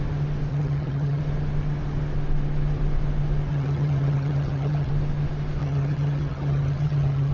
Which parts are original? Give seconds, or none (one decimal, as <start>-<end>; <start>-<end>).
0.0-0.5; 1.2-3.5; 4.9-5.6